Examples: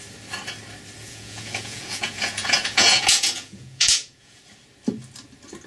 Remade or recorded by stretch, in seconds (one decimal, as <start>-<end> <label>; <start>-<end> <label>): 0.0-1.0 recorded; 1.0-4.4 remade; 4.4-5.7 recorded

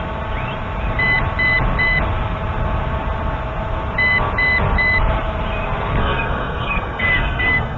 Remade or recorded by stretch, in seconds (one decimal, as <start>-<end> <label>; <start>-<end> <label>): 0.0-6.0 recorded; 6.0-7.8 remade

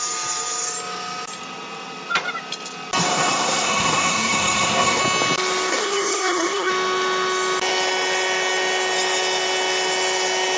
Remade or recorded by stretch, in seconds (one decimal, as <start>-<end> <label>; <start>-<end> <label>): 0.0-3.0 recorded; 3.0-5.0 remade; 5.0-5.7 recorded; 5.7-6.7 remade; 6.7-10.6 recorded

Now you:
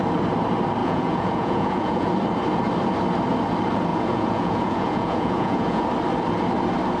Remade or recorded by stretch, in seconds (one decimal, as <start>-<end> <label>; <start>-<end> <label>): 0.0-0.8 recorded; 0.8-2.1 remade; 2.1-3.9 recorded; 3.9-5.9 remade; 5.9-7.0 recorded